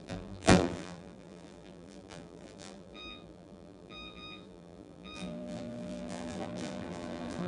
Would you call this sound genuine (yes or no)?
no